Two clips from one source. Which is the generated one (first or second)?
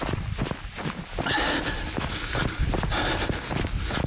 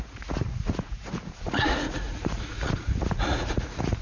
second